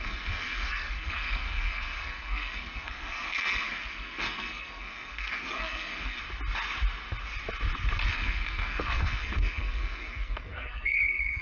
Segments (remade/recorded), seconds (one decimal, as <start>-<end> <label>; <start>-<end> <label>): 0.0-6.2 remade; 6.2-8.1 recorded; 8.1-11.4 remade